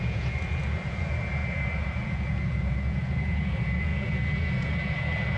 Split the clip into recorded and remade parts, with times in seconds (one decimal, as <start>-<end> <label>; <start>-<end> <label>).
0.0-5.4 remade